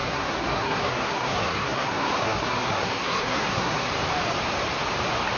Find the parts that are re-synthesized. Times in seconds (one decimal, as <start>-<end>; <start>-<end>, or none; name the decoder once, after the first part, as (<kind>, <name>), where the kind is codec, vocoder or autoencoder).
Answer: 0.0-3.9 (codec, SNAC)